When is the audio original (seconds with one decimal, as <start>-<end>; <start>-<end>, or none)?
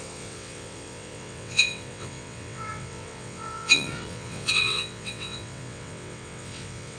none